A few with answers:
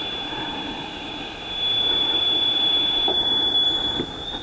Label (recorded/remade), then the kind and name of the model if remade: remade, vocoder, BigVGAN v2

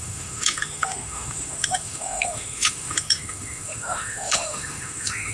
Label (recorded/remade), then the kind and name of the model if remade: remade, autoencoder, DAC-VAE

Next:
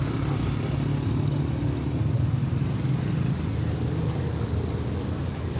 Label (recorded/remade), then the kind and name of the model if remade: recorded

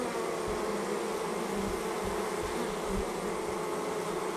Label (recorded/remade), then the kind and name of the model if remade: recorded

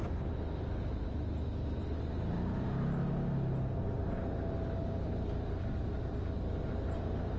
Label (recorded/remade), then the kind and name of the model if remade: recorded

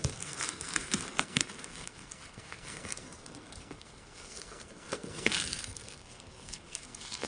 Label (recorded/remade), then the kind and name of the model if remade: remade, codec, SNAC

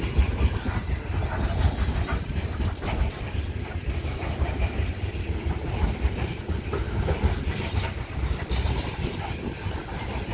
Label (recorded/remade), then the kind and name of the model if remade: recorded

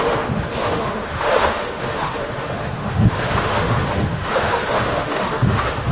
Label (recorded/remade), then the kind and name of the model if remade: remade, autoencoder, DAC-VAE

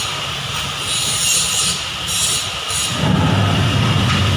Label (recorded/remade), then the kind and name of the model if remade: recorded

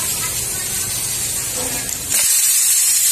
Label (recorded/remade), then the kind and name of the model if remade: recorded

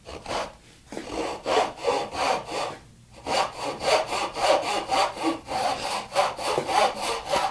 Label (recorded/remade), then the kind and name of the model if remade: remade, vocoder, BigVGAN v2